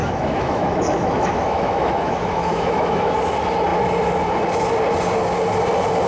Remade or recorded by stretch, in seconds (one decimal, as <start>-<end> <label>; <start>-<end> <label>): 0.0-3.1 remade; 3.1-6.1 recorded